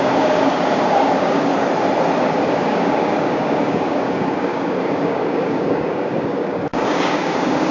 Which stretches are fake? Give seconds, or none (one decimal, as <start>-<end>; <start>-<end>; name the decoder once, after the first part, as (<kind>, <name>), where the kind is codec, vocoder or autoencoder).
0.0-1.5 (codec, DAC); 2.2-7.7

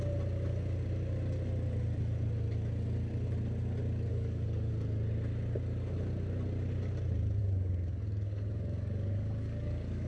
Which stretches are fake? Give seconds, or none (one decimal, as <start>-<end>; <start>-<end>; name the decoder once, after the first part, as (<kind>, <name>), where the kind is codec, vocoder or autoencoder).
4.1-4.7 (codec, DAC); 7.4-10.1